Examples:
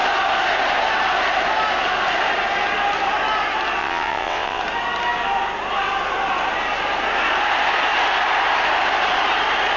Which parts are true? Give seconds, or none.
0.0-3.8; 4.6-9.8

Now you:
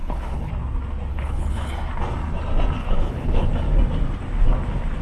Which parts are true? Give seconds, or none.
0.5-1.1; 1.7-2.8; 3.5-5.0

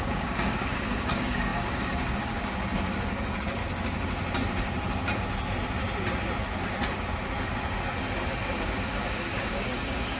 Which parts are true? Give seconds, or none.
3.6-8.6

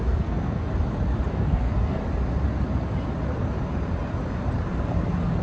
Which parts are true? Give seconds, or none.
0.7-1.3; 2.0-5.4

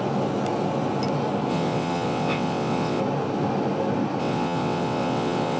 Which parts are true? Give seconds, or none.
0.0-1.5; 3.0-4.2

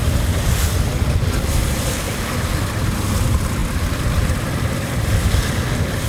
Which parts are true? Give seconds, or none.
0.0-6.1

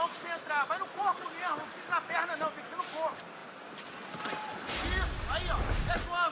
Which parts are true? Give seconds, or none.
0.0-6.3

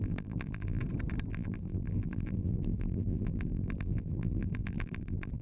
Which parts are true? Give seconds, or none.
0.8-1.3